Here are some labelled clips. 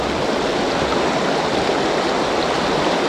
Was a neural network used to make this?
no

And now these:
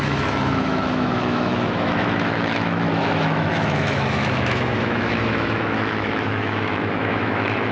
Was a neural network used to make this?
yes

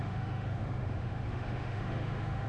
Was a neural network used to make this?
yes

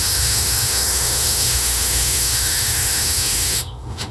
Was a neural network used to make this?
yes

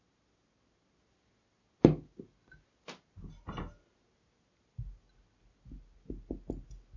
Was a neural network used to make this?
no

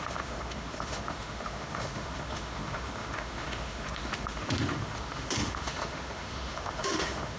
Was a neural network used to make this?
yes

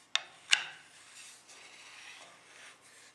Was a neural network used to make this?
no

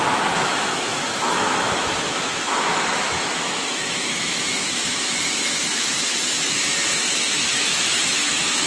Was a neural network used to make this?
yes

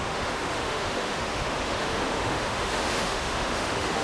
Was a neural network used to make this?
yes